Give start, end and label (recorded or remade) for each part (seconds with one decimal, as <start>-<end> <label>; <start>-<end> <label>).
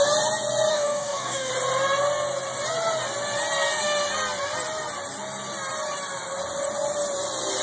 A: 0.0-0.7 recorded; 0.7-1.5 remade; 1.5-7.6 recorded